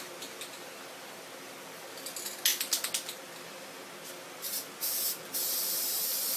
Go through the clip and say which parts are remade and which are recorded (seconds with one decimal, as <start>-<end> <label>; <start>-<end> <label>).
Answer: 0.0-6.4 recorded